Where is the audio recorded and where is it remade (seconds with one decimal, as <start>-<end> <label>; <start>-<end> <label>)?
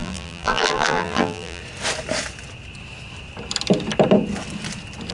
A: 0.0-1.6 remade; 1.6-5.1 recorded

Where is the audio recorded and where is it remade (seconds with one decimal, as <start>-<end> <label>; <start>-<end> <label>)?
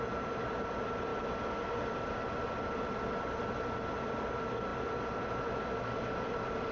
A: 0.0-6.7 recorded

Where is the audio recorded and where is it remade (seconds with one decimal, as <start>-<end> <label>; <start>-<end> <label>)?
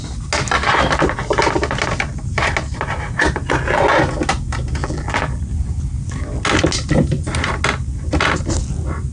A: 0.0-4.8 recorded; 4.8-5.4 remade; 5.4-9.1 recorded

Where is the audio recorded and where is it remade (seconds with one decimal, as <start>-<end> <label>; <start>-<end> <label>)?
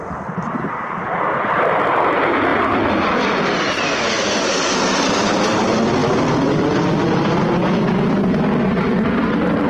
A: 0.0-9.7 recorded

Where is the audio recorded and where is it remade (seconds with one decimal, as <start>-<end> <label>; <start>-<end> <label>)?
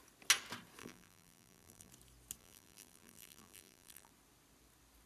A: 0.0-0.8 recorded; 0.8-1.9 remade; 1.9-2.4 recorded; 2.4-4.1 remade; 4.1-5.1 recorded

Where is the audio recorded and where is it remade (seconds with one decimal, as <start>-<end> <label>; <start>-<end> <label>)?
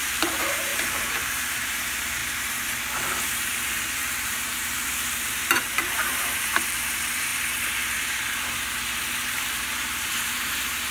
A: 0.0-2.2 remade; 2.2-3.7 recorded; 3.7-7.3 remade; 7.3-9.6 recorded; 9.6-10.9 remade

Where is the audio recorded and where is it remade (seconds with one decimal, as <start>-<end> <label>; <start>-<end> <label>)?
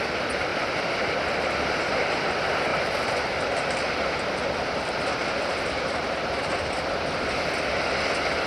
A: 0.0-0.5 recorded; 0.5-1.1 remade; 1.1-2.7 recorded; 2.7-6.1 remade; 6.1-8.5 recorded